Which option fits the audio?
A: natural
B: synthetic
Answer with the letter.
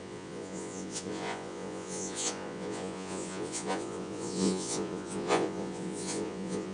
B